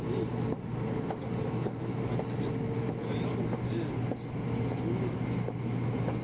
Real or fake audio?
real